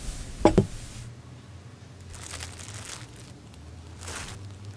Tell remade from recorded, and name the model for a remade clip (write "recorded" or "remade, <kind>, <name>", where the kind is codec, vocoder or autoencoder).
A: recorded